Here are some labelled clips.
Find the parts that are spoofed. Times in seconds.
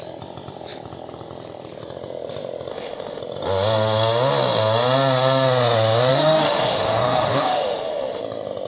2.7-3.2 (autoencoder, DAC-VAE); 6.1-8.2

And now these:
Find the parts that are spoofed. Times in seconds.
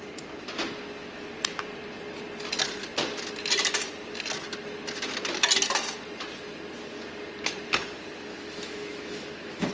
8.3-9.7 (autoencoder, DAC-VAE)